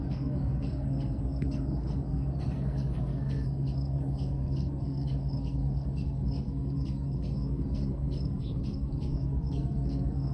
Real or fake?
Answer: fake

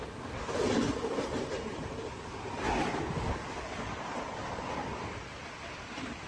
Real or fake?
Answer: real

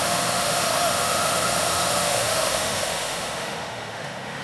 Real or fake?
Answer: fake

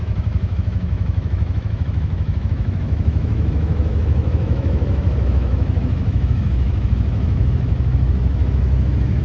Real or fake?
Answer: fake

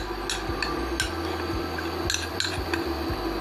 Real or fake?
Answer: real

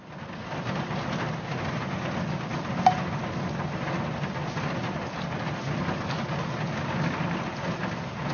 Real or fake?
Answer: real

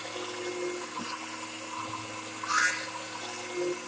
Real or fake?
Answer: real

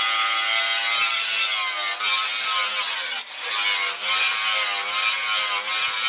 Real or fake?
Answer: real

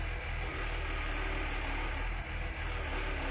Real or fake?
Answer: real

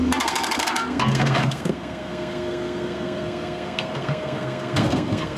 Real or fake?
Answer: fake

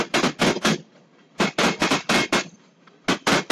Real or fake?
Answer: real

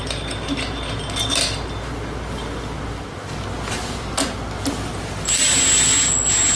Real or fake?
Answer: real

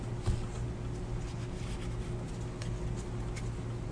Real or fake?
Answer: real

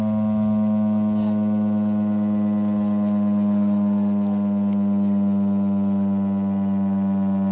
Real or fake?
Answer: real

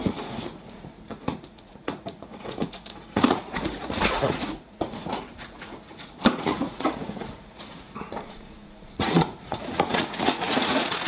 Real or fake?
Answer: fake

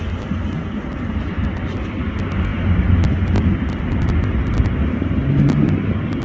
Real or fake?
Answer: real